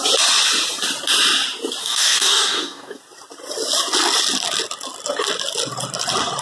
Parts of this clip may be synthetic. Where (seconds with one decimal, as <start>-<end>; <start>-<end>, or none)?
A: 1.8-3.0